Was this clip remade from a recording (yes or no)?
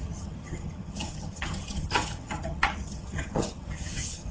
yes